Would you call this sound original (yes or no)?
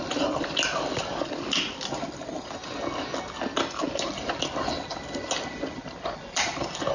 yes